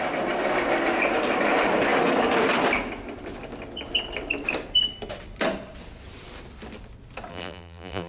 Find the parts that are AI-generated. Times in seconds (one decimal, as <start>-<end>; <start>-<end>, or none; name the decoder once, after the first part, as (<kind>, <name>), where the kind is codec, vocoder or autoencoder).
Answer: 7.3-8.1 (vocoder, BigVGAN v2)